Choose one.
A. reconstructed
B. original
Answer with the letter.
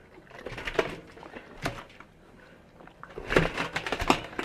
B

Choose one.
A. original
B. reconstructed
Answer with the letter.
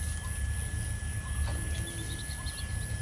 A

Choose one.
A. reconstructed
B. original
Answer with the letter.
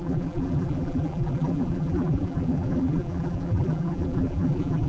A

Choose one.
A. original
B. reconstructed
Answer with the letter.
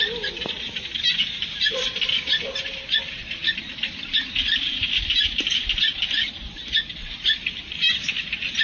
A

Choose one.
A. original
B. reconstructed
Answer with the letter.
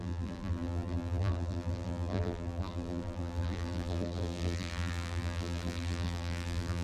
B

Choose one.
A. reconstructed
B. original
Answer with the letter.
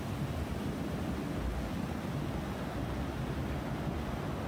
B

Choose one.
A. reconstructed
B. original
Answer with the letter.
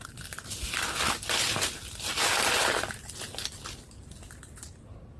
B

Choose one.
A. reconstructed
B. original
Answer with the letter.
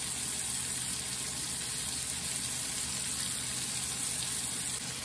B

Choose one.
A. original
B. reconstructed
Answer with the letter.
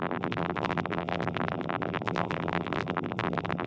B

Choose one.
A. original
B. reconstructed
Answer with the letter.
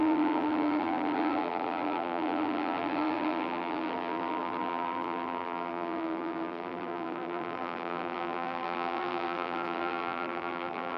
B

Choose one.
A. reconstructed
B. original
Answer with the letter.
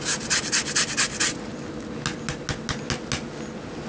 B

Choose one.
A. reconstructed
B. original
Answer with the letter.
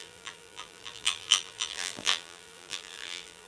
A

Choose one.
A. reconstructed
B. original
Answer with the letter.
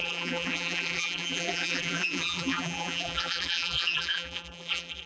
A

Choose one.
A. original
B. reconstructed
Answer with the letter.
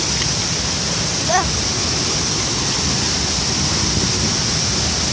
A